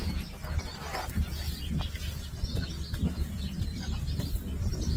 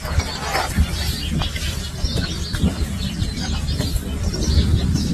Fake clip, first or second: second